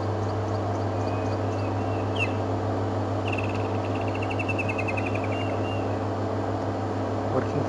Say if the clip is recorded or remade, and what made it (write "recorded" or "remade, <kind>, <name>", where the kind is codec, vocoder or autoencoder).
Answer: recorded